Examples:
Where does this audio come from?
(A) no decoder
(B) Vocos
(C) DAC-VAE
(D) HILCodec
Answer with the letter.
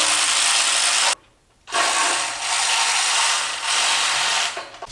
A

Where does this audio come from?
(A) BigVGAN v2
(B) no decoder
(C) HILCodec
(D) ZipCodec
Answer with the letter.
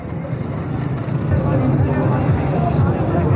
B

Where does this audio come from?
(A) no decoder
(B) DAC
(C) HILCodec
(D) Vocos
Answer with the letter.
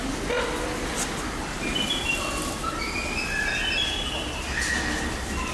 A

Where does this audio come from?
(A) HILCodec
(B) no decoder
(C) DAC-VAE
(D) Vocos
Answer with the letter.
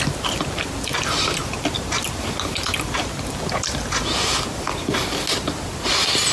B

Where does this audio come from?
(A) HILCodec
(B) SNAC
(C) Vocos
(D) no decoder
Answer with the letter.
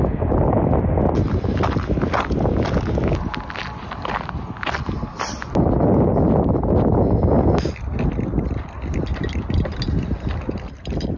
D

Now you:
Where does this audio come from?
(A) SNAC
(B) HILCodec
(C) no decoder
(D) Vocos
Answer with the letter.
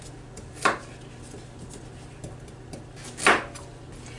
C